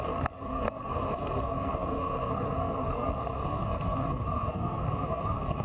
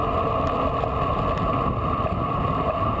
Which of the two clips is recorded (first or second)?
second